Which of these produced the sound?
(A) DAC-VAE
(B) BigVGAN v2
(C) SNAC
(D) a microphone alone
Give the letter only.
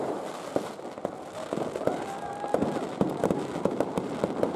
B